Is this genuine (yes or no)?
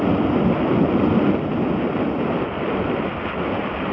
yes